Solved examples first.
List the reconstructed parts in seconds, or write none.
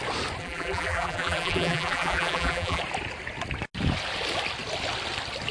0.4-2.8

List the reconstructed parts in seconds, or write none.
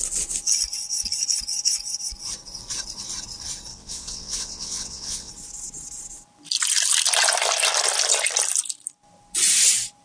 3.7-5.3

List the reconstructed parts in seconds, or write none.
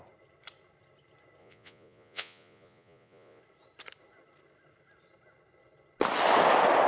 1.4-3.4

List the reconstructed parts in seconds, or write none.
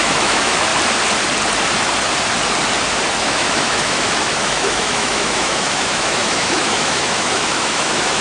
0.0-0.7; 3.2-8.2